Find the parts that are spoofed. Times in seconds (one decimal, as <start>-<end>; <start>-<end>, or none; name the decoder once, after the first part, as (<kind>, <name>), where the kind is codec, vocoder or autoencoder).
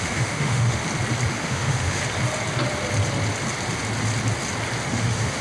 0.0-0.8 (autoencoder, DAC-VAE); 1.3-2.0; 4.9-5.4